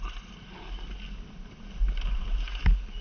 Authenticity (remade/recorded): recorded